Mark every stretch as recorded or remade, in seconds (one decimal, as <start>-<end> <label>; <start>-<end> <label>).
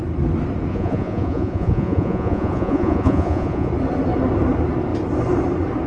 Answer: 0.0-0.7 recorded; 0.7-3.7 remade; 3.7-5.9 recorded